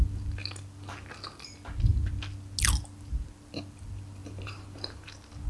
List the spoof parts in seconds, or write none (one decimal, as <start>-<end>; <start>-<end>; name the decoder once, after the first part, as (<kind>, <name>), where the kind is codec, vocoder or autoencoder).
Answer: 4.2-5.1 (vocoder, BigVGAN v2)